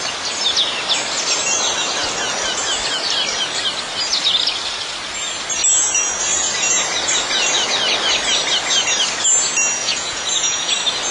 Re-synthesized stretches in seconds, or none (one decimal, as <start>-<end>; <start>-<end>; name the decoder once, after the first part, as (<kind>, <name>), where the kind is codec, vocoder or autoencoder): 9.8-10.7 (vocoder, Vocos)

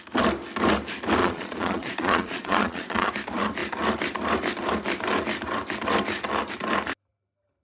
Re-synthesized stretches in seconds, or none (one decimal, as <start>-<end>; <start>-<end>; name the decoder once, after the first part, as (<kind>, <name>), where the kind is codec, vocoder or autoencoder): 1.2-3.1 (vocoder, Vocos)